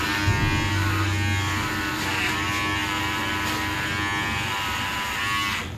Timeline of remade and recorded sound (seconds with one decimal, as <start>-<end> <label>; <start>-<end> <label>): 0.0-5.8 recorded